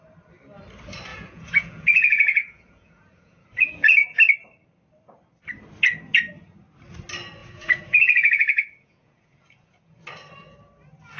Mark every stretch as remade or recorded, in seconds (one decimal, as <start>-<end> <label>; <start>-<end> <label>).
0.0-1.1 recorded; 1.1-4.2 remade; 4.2-7.4 recorded; 7.4-10.0 remade; 10.0-11.2 recorded